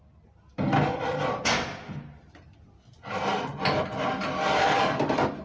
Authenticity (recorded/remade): recorded